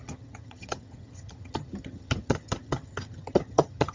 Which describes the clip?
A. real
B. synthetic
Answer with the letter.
B